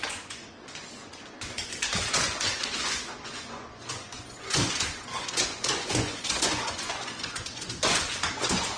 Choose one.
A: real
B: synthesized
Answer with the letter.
B